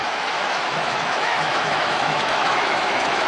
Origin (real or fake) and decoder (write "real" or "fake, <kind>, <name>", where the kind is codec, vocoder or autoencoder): fake, autoencoder, DAC-VAE